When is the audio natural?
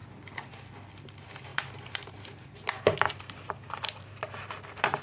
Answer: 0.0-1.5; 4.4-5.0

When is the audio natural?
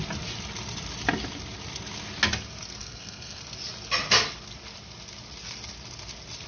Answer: 0.0-2.8; 3.4-6.5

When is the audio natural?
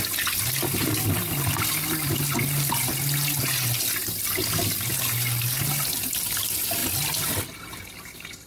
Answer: 0.0-8.5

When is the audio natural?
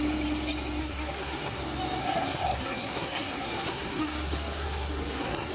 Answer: 0.0-0.8; 1.6-2.0